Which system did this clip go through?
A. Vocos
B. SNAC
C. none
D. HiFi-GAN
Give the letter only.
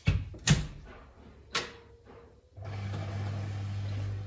C